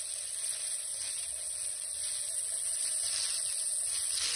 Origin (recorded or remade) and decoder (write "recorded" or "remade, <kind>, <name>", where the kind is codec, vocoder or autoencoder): recorded